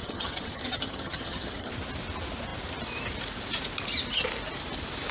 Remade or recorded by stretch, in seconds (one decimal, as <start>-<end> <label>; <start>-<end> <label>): 0.0-1.7 remade; 1.7-5.1 recorded

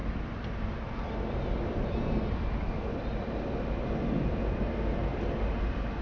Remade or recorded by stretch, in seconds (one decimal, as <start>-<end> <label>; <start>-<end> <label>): 0.0-6.0 recorded

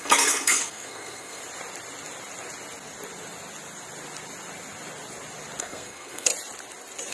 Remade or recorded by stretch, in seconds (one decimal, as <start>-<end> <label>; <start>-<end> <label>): 0.0-1.4 remade; 1.4-5.6 recorded; 5.6-6.3 remade; 6.3-7.1 recorded

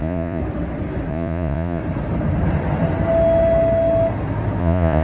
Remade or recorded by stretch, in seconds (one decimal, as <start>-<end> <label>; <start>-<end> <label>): 0.0-0.4 remade; 0.4-1.1 recorded; 1.1-1.8 remade; 1.8-4.6 recorded; 4.6-5.0 remade